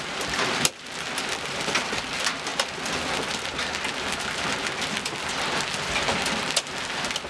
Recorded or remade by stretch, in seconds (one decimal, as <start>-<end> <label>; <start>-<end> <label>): 0.0-7.3 recorded